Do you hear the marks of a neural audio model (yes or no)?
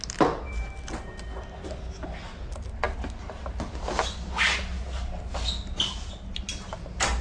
no